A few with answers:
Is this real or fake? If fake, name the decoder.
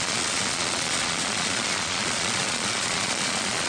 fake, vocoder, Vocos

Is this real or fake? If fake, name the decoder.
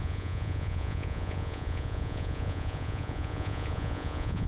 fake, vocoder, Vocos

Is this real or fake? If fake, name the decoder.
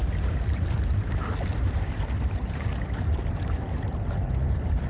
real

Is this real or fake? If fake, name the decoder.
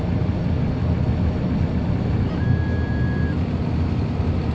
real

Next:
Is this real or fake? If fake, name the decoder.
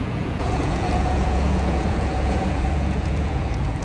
fake, vocoder, Vocos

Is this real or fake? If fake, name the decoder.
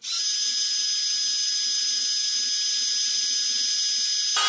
real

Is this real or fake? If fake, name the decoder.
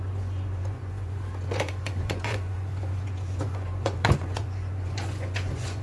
fake, vocoder, Vocos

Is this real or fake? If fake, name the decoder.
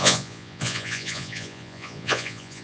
fake, vocoder, Vocos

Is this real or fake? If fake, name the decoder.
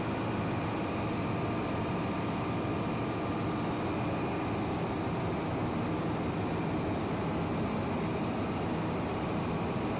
real